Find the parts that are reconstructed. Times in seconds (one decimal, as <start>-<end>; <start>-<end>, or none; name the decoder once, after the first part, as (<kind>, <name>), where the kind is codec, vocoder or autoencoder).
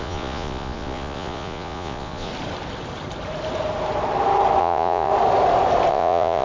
0.0-2.3 (vocoder, Vocos); 4.6-5.1; 5.9-6.4